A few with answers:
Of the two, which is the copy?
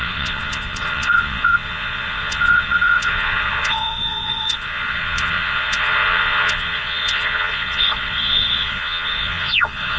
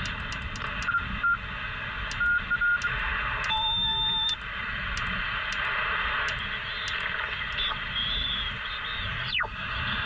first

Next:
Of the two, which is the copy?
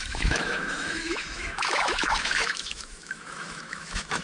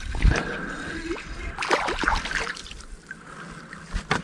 first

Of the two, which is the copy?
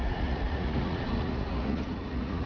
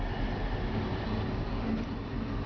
first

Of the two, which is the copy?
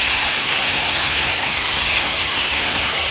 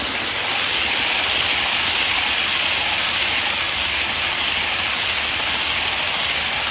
first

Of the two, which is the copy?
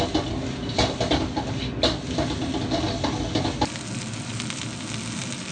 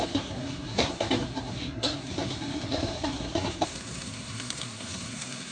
second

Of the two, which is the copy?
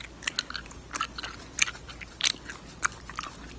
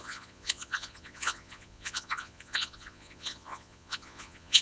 second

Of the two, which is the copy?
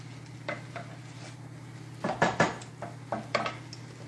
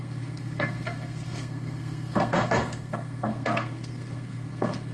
second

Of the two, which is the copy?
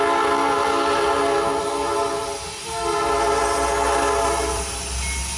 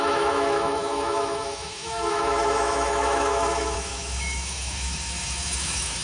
second